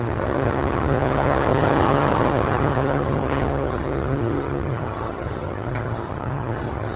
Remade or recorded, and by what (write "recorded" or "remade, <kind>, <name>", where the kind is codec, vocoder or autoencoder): remade, vocoder, HiFi-GAN